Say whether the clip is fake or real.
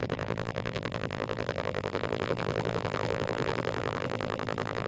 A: fake